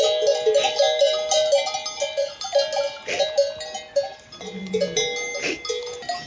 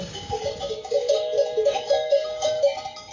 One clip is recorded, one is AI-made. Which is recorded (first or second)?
first